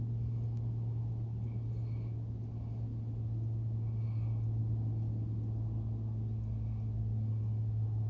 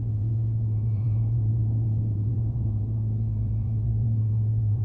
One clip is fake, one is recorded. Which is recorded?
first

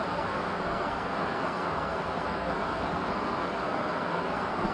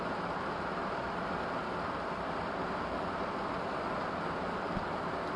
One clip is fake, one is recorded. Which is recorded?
second